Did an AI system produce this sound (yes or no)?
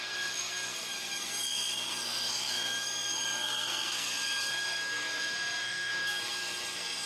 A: yes